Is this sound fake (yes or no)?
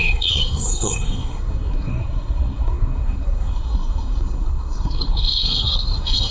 yes